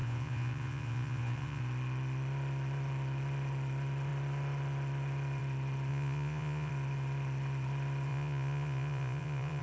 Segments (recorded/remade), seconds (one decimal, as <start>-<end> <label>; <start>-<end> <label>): 0.0-1.6 remade; 1.6-5.9 recorded; 5.9-6.7 remade; 6.7-8.1 recorded; 8.1-9.6 remade